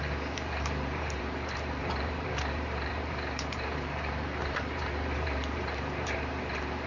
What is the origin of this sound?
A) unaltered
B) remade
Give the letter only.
B